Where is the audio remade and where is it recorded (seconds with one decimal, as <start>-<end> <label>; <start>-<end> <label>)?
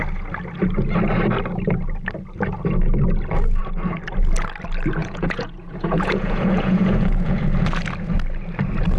0.0-5.0 recorded; 5.0-7.4 remade; 7.4-9.0 recorded